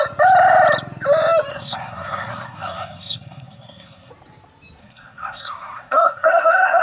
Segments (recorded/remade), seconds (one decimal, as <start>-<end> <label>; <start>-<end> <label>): 0.0-1.5 recorded; 1.5-4.1 remade; 4.1-4.8 recorded; 4.8-6.8 remade